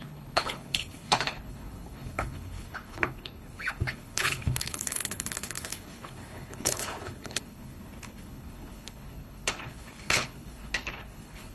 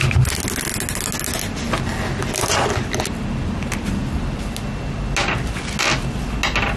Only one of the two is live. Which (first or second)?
second